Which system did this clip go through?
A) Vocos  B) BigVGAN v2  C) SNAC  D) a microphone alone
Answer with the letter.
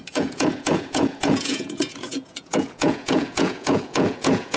A